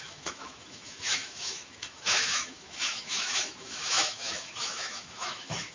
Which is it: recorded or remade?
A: remade